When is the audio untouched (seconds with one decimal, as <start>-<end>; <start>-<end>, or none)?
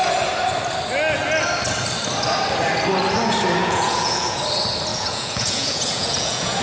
0.0-3.6; 4.4-4.9